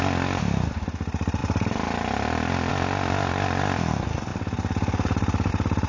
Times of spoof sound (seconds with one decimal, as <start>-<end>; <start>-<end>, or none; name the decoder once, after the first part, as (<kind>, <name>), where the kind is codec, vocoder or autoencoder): 0.0-1.4 (vocoder, BigVGAN v2); 2.7-5.9